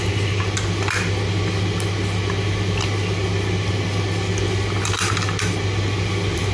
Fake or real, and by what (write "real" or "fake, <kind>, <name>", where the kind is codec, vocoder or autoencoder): real